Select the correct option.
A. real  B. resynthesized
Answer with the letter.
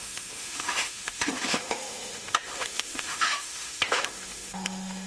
B